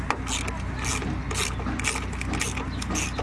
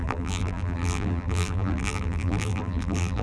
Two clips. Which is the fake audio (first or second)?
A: second